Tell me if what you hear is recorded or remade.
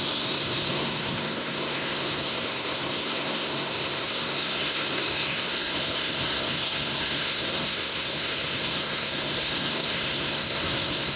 remade